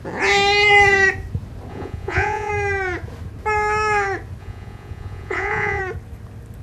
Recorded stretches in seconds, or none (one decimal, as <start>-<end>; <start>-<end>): 0.0-1.7; 2.5-4.4; 5.8-6.6